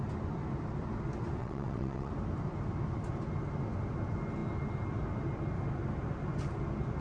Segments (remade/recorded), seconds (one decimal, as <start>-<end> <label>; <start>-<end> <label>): 0.0-1.4 recorded; 1.4-2.1 remade; 2.1-7.0 recorded